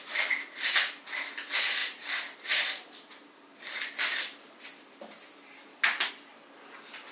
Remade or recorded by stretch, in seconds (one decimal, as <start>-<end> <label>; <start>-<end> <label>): 0.0-1.8 recorded; 1.8-6.1 remade; 6.1-7.1 recorded